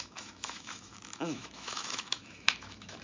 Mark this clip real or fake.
fake